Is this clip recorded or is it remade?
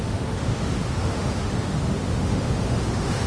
remade